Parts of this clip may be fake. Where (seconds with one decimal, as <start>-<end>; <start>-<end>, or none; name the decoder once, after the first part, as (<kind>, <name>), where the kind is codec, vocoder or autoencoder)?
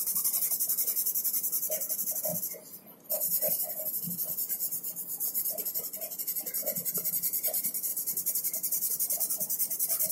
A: 6.6-7.1 (vocoder, BigVGAN v2)